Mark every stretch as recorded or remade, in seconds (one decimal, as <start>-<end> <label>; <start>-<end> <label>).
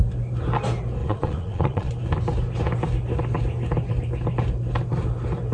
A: 0.0-1.0 recorded; 1.0-1.9 remade; 1.9-5.5 recorded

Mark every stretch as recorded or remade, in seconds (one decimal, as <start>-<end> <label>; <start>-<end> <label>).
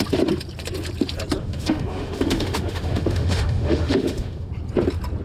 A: 0.0-1.4 recorded; 1.4-4.5 remade; 4.5-5.2 recorded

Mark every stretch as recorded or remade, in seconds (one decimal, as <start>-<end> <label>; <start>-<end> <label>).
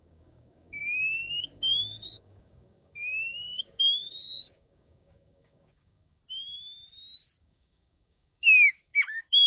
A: 0.0-0.8 remade; 0.8-1.4 recorded; 1.4-6.2 remade; 6.2-7.4 recorded; 7.4-9.5 remade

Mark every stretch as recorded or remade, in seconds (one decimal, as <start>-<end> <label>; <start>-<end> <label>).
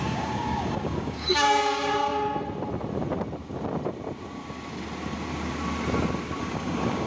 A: 0.0-2.1 remade; 2.1-6.4 recorded; 6.4-7.1 remade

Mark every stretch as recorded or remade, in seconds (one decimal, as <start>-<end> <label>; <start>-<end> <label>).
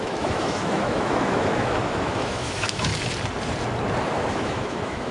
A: 0.0-2.9 remade; 2.9-4.3 recorded; 4.3-5.1 remade